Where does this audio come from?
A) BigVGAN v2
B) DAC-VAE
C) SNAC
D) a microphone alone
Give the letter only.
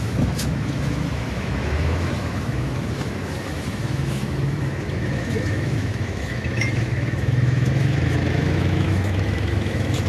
B